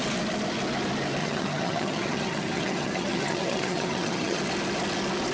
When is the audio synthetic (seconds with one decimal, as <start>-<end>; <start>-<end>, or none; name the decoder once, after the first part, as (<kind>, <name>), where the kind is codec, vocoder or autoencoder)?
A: 1.2-4.4 (vocoder, HiFi-GAN)